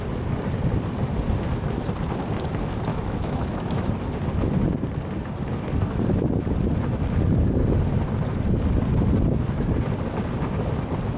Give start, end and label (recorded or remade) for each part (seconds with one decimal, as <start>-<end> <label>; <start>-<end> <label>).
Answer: 0.0-2.9 recorded; 2.9-3.9 remade; 3.9-11.2 recorded